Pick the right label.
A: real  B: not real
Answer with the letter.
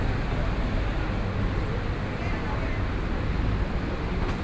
A